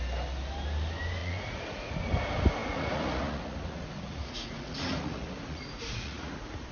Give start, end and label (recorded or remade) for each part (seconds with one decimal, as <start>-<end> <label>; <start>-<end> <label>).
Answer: 0.0-1.2 recorded; 1.2-1.9 remade; 1.9-2.6 recorded; 2.6-6.7 remade